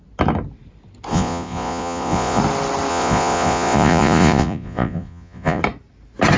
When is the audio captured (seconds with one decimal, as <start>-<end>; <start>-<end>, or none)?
0.0-1.1; 2.4-2.9; 5.6-6.4

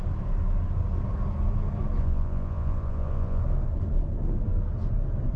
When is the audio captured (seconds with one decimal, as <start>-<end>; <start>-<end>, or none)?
0.0-2.0; 3.4-5.4

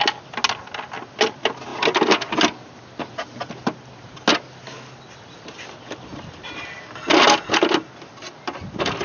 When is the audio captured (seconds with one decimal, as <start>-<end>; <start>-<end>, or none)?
0.0-9.0

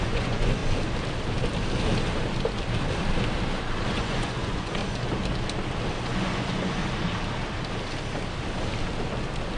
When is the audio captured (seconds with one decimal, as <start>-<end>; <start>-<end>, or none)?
0.6-3.9; 4.8-6.0; 6.8-9.6

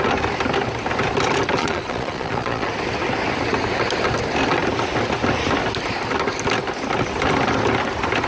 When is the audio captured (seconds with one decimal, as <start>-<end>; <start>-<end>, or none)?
0.0-1.6; 2.7-8.3

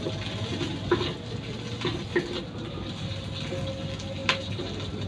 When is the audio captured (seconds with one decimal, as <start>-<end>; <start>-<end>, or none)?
0.0-5.1